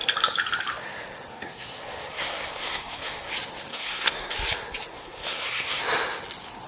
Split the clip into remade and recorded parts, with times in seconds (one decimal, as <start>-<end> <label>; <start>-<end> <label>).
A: 0.0-1.3 recorded; 1.3-3.3 remade; 3.3-3.7 recorded; 3.7-4.3 remade; 4.3-4.9 recorded; 4.9-5.8 remade; 5.8-6.7 recorded